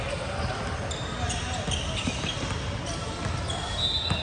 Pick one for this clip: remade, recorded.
recorded